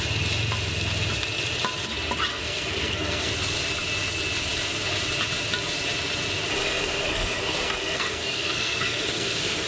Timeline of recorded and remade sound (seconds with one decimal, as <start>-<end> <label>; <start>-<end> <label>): 0.0-2.3 recorded; 2.3-3.3 remade; 3.3-6.6 recorded; 6.6-9.7 remade